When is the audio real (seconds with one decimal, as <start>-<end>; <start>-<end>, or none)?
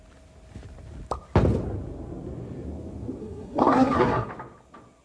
0.0-3.2; 4.3-5.0